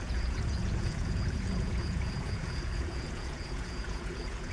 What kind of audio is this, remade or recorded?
remade